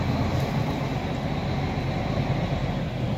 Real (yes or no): yes